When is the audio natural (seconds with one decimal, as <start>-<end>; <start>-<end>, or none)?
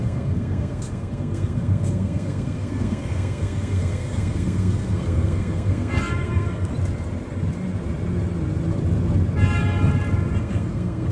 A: 6.7-10.4